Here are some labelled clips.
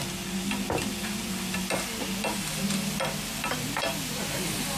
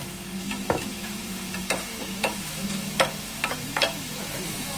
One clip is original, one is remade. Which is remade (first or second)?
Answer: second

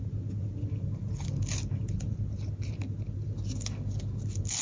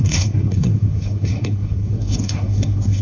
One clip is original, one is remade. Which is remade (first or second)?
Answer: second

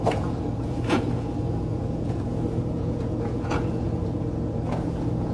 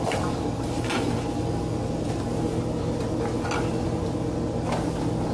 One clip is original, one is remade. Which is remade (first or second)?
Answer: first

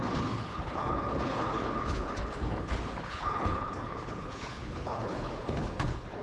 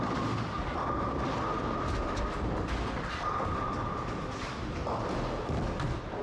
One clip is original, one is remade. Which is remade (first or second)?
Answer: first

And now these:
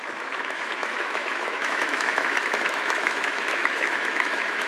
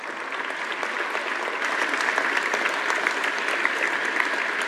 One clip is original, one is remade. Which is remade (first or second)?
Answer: first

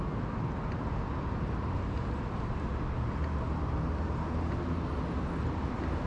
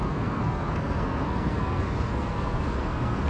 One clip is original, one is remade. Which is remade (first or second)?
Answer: second